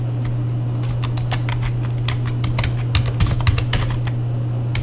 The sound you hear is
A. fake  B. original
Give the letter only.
B